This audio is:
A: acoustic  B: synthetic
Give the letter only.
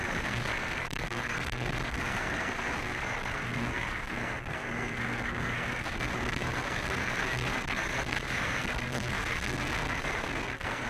B